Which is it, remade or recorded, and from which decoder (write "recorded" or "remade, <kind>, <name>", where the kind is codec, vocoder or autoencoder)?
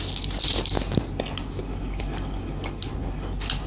recorded